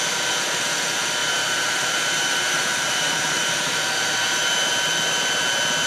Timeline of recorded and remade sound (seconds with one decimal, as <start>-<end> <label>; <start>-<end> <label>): 0.0-1.2 recorded; 1.2-4.7 remade; 4.7-5.9 recorded